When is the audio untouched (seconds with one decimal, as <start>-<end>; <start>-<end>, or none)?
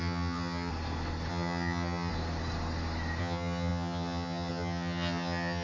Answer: 0.7-1.3; 2.1-3.2